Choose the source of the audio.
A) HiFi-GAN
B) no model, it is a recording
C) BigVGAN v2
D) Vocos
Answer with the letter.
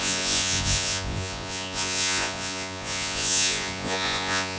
D